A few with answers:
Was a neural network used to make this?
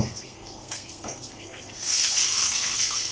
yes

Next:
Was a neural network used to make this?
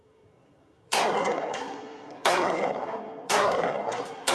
yes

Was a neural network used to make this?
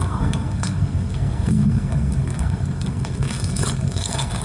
yes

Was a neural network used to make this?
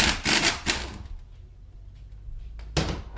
no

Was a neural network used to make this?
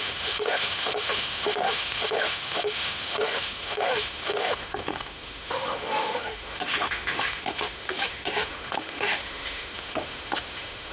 yes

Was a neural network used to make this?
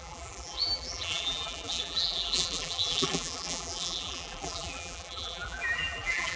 yes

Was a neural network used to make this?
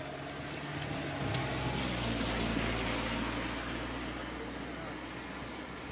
no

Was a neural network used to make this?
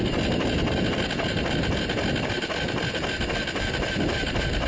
no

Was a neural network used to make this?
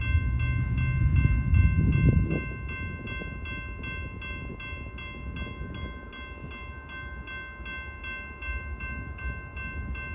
no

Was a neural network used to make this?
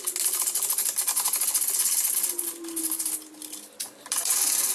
no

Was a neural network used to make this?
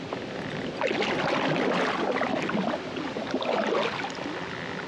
no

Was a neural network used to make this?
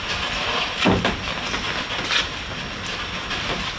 no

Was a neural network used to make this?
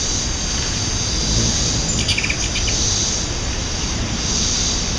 no